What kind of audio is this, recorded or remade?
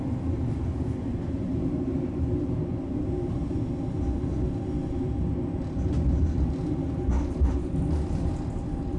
recorded